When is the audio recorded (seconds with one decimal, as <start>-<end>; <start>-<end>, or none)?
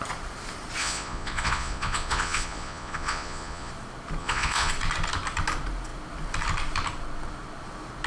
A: 0.0-0.8; 3.7-4.2; 4.7-8.1